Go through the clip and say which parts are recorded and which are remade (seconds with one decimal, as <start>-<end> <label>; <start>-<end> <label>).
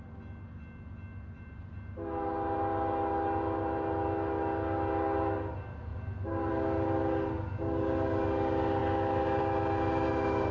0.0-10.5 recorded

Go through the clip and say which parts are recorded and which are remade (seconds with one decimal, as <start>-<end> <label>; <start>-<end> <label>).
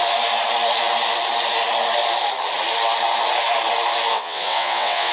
0.0-4.1 recorded; 4.1-5.1 remade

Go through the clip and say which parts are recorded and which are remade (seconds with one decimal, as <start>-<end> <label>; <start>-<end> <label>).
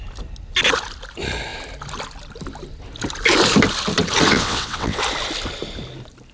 0.0-4.3 recorded; 4.3-5.0 remade; 5.0-6.3 recorded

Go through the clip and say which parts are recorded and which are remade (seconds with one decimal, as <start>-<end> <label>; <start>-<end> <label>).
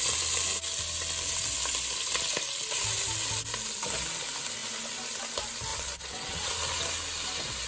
0.0-5.7 recorded; 5.7-6.5 remade; 6.5-7.7 recorded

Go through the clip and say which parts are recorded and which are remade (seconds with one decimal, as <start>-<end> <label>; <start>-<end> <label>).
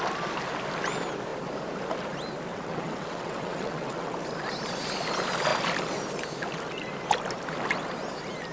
0.0-2.5 recorded; 2.5-4.1 remade; 4.1-8.5 recorded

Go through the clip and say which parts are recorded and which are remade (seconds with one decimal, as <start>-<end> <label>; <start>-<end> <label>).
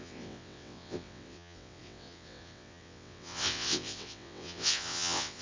0.0-5.4 remade